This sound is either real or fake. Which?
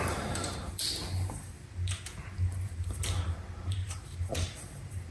fake